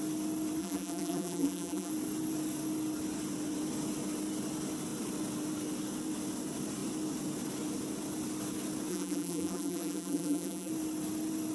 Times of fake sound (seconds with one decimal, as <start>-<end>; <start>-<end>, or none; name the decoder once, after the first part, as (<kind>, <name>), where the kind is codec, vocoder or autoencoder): 0.6-1.9 (vocoder, BigVGAN v2); 8.9-10.7